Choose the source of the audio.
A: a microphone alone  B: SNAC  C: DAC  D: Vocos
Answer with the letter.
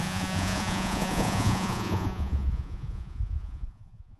D